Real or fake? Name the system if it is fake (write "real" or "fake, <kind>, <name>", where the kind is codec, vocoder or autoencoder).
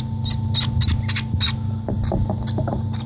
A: real